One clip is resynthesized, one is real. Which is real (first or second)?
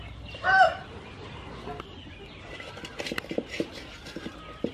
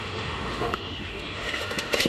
first